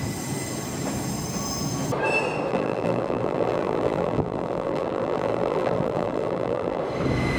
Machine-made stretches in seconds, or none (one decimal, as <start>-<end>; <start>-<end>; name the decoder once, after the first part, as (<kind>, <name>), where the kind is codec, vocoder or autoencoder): 2.5-6.8 (vocoder, BigVGAN v2)